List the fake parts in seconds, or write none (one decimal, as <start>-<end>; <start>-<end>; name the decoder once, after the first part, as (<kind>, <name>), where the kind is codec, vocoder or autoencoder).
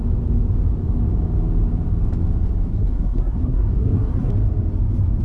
2.7-4.3 (codec, SNAC)